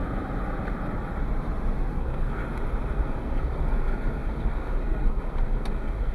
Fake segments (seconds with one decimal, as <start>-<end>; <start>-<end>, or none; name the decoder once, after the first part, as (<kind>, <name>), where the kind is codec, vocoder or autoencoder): 1.9-2.4 (codec, SNAC); 2.9-6.1